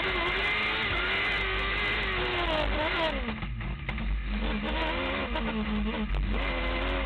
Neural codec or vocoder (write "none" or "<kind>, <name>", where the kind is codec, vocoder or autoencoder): none